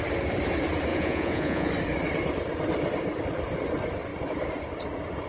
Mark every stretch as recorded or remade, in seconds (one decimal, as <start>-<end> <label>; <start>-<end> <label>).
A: 0.0-0.9 recorded; 0.9-1.7 remade; 1.7-5.3 recorded